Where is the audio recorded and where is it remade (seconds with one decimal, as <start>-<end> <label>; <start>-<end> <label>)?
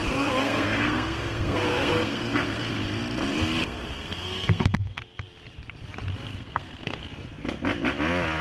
0.0-2.7 remade; 2.7-3.6 recorded; 3.6-5.0 remade; 5.0-6.3 recorded; 6.3-7.0 remade; 7.0-8.4 recorded